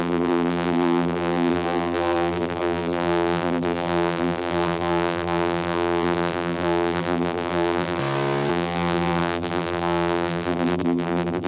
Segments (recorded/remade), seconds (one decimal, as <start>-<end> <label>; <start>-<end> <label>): 0.0-8.0 remade; 8.0-8.5 recorded; 8.5-11.5 remade